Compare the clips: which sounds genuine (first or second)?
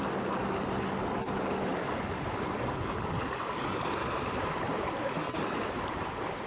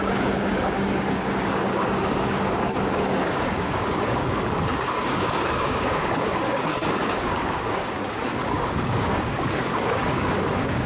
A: first